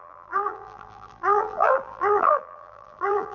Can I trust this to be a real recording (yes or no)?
no